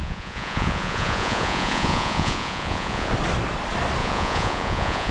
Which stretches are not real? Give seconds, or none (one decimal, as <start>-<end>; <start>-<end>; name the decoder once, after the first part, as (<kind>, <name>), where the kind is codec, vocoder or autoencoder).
0.0-3.1 (vocoder, Vocos); 4.0-5.1

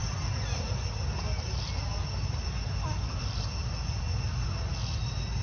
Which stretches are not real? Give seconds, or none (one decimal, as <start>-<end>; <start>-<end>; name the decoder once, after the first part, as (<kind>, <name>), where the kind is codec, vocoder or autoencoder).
none

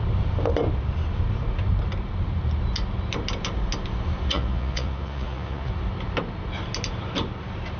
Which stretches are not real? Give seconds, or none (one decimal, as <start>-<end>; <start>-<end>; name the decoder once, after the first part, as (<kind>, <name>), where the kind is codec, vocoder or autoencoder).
4.3-5.7 (vocoder, Vocos)

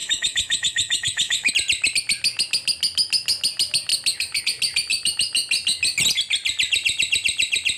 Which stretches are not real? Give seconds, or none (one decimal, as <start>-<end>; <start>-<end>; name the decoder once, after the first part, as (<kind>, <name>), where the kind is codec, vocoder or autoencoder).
0.0-1.5 (autoencoder, DAC-VAE)

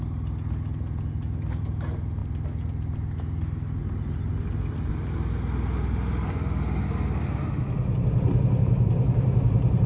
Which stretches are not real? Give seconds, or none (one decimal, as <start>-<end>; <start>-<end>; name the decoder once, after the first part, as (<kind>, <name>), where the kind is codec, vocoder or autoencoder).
none

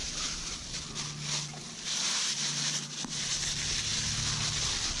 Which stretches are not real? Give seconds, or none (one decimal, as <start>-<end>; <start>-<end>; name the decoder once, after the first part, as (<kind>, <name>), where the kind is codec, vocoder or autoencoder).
0.0-0.8 (vocoder, BigVGAN v2); 1.5-3.5

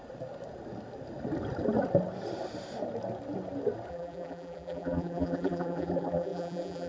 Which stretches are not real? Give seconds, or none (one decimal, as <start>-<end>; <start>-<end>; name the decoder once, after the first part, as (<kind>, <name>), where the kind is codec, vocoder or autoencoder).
3.9-6.9 (vocoder, BigVGAN v2)